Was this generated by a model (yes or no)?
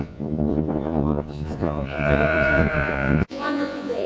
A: yes